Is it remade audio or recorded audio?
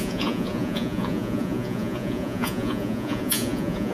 remade